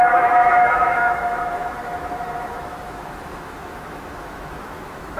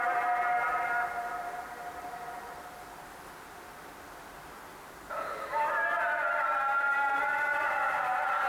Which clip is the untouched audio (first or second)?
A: second